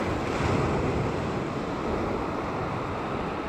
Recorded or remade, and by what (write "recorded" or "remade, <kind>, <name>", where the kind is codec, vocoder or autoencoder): recorded